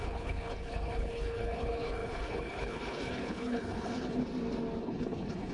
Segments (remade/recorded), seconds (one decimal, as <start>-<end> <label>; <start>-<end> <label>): 0.0-4.2 remade; 4.2-4.8 recorded; 4.8-5.5 remade